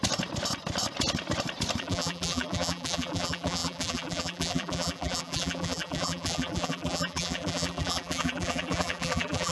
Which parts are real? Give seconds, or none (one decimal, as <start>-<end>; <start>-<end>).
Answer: 0.0-1.8